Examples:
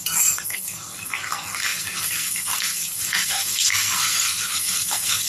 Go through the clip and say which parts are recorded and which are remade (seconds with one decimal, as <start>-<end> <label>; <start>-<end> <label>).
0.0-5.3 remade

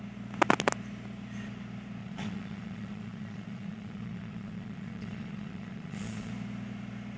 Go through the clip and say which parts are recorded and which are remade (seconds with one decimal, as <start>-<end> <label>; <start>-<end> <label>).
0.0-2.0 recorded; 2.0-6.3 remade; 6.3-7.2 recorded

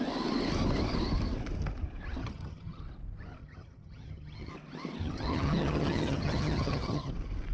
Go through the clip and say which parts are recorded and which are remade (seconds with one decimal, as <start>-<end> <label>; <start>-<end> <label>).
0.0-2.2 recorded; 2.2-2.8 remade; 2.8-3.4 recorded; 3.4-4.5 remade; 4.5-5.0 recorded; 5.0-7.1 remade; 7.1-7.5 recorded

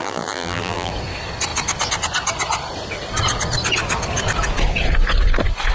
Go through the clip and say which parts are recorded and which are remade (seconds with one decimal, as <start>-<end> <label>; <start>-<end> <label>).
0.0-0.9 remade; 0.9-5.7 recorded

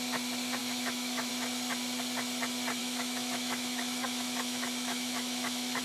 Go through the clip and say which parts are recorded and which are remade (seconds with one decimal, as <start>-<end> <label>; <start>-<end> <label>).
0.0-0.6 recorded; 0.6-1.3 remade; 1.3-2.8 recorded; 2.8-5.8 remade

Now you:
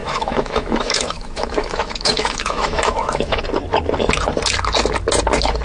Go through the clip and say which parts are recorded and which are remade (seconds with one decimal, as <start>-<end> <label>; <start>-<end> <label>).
0.0-3.4 remade; 3.4-5.6 recorded